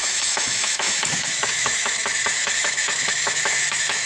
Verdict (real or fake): fake